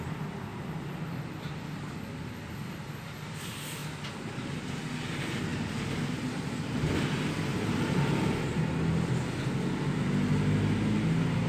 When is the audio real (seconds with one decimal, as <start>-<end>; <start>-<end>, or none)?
0.0-7.5; 8.6-11.5